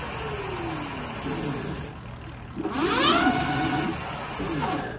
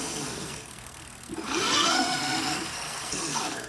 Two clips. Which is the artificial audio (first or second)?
second